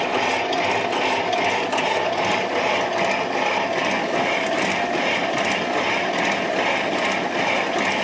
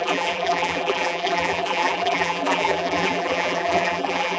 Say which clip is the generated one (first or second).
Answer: second